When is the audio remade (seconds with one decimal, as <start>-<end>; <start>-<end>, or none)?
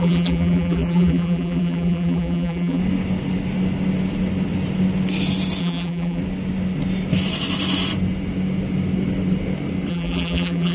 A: 0.0-2.8; 5.6-6.2; 9.9-10.7